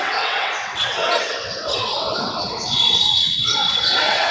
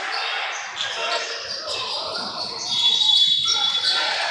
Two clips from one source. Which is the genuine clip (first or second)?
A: second